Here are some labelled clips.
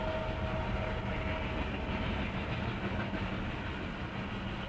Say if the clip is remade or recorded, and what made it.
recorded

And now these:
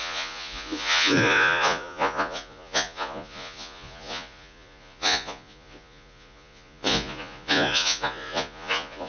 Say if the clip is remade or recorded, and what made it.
remade, vocoder, Vocos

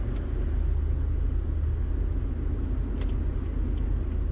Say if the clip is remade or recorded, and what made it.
recorded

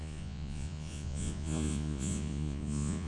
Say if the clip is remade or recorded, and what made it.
remade, vocoder, Vocos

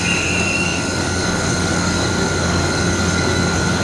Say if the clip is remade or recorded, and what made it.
remade, codec, DAC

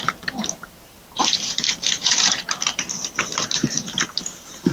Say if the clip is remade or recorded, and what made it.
remade, vocoder, BigVGAN v2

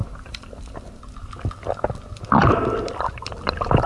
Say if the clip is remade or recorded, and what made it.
recorded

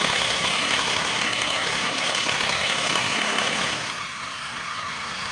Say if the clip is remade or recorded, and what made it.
remade, codec, SNAC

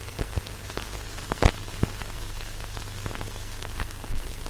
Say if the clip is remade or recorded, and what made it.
remade, codec, SNAC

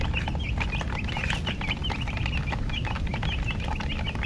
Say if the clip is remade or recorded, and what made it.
recorded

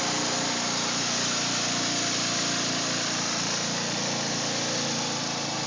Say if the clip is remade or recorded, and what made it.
recorded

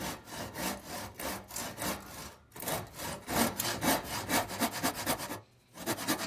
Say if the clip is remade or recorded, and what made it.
recorded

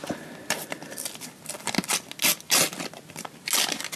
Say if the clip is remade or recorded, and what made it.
recorded